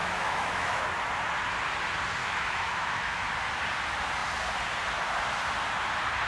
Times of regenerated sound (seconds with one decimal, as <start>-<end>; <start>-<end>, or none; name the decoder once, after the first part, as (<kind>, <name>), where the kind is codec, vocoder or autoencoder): 0.0-0.8 (autoencoder, DAC-VAE); 2.2-3.3